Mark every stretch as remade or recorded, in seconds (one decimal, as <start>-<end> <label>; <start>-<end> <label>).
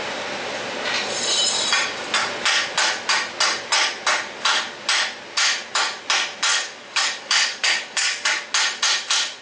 0.0-6.5 recorded; 6.5-8.4 remade; 8.4-9.4 recorded